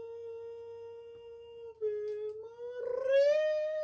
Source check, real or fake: real